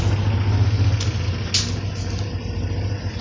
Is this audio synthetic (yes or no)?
no